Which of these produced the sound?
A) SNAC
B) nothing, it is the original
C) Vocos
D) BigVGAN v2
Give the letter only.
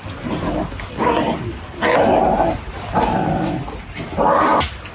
B